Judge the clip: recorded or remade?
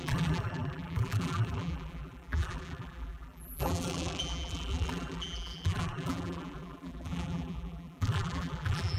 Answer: remade